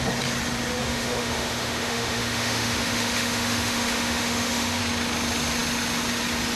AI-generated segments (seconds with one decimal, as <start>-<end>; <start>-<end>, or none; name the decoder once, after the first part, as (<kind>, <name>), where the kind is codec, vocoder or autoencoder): 0.8-4.8 (autoencoder, DAC-VAE)